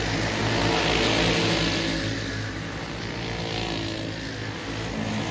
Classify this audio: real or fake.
real